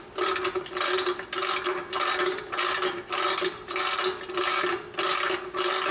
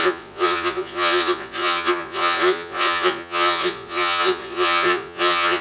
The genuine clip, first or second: first